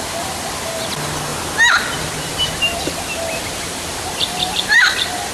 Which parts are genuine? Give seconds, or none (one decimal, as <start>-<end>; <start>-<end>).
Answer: 1.3-2.0